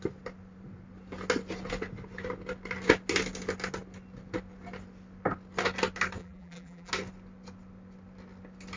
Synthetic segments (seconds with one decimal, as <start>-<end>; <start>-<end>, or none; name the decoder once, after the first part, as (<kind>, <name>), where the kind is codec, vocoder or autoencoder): 6.2-6.9 (vocoder, BigVGAN v2)